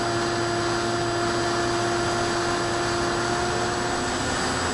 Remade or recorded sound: recorded